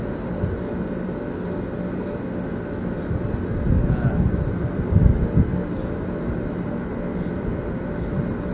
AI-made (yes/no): no